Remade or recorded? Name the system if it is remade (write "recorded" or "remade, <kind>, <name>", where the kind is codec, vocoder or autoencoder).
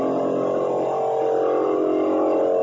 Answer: recorded